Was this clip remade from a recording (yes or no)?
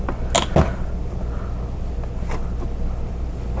no